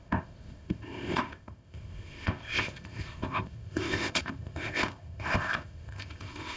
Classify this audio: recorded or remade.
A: remade